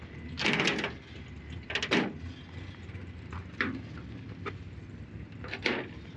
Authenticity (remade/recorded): recorded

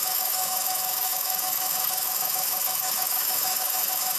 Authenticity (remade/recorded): remade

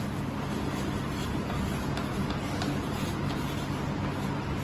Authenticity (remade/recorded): recorded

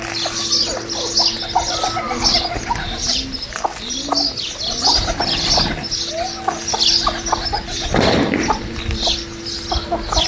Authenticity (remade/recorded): recorded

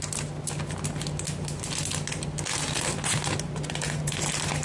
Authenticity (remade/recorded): recorded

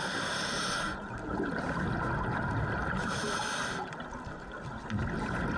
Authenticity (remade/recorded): recorded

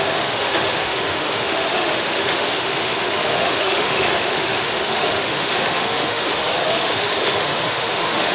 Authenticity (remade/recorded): remade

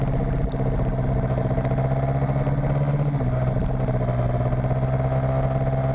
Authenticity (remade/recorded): recorded